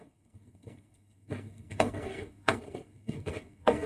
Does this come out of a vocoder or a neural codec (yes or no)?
yes